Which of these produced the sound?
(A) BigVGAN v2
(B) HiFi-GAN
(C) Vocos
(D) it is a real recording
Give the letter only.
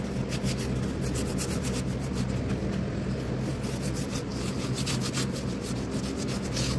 D